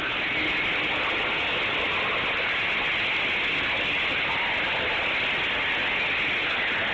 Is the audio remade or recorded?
recorded